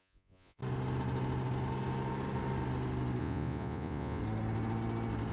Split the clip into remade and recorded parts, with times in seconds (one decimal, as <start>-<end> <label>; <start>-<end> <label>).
0.0-0.6 remade; 0.6-3.2 recorded; 3.2-4.2 remade; 4.2-5.3 recorded